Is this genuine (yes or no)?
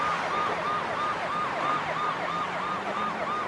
yes